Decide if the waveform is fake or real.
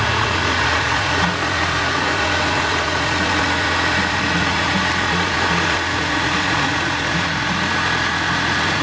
fake